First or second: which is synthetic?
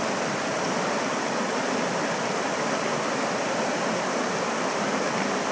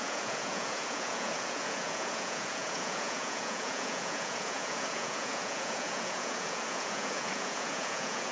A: second